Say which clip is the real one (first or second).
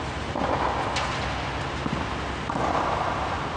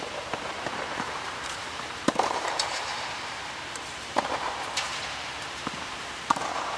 first